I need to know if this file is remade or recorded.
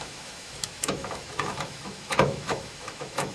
remade